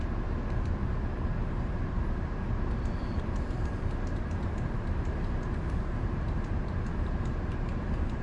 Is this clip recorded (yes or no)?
no